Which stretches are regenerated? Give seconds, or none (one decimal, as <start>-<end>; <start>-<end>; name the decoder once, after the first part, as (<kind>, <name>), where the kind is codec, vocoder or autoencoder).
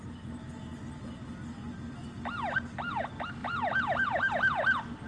3.4-4.3 (vocoder, BigVGAN v2)